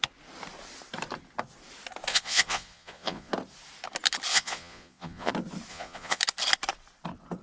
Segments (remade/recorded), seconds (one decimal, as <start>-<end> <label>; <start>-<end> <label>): 0.0-2.1 recorded; 2.1-3.3 remade; 3.3-4.3 recorded; 4.3-5.3 remade; 5.3-5.7 recorded; 5.7-6.2 remade; 6.2-7.4 recorded

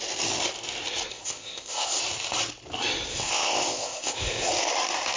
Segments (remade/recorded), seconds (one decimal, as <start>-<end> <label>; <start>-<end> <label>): 0.0-1.1 recorded; 1.1-2.0 remade; 2.0-3.1 recorded; 3.1-4.5 remade; 4.5-5.2 recorded

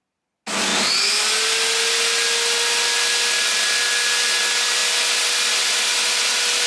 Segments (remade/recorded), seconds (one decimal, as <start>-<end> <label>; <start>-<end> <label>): 0.0-6.7 recorded